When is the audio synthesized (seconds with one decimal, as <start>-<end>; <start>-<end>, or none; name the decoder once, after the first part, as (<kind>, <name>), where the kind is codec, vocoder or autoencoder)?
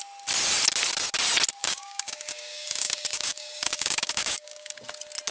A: 1.6-4.8 (codec, DAC)